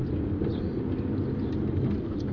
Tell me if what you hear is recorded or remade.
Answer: recorded